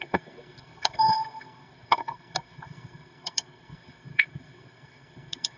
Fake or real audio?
fake